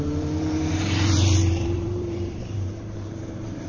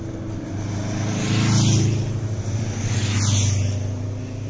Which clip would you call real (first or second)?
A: second